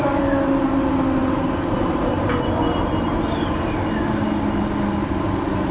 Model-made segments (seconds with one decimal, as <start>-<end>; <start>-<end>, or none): none